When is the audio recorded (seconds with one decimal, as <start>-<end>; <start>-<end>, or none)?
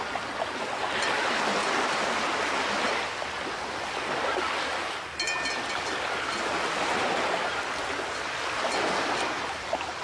0.0-10.0